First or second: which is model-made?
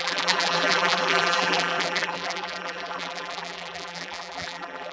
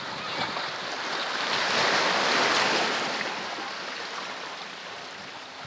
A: first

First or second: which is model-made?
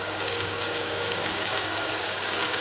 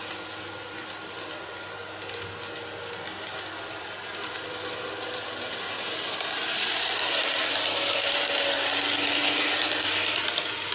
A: first